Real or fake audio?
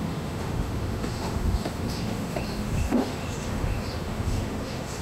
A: fake